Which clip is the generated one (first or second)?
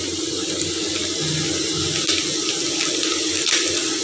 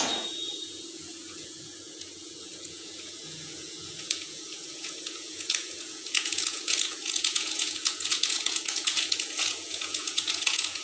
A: second